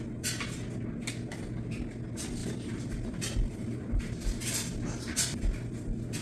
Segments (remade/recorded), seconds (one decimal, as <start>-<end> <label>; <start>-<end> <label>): 0.0-2.4 recorded; 2.4-5.4 remade; 5.4-6.2 recorded